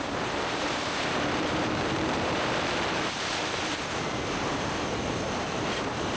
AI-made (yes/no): yes